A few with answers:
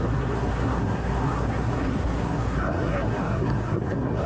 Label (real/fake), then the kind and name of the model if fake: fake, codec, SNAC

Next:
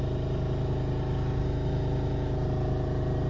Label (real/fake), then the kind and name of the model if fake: real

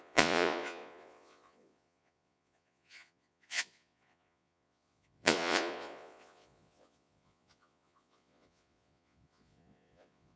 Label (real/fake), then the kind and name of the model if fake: fake, vocoder, Vocos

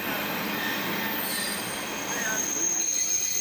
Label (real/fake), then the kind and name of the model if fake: real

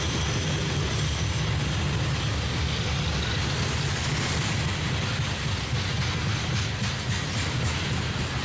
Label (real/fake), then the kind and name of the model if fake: real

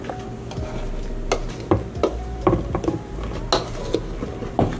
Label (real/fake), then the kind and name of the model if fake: real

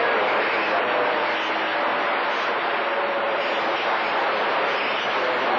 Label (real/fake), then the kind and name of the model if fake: real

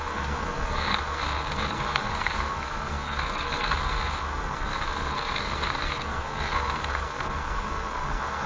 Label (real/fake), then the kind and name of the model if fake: fake, codec, SNAC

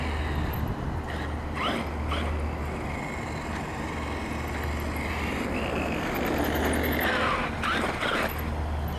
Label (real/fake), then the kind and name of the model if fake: real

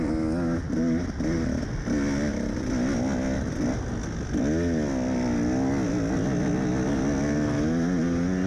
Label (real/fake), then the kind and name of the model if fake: real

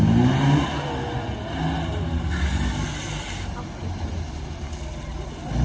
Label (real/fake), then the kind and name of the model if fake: real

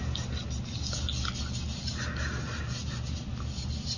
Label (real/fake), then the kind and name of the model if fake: real